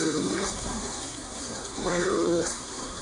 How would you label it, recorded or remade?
remade